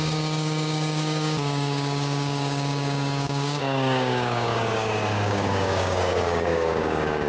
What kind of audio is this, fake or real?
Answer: fake